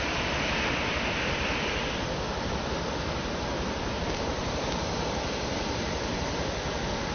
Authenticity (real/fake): real